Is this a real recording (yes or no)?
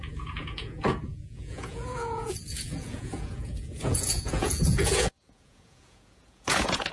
no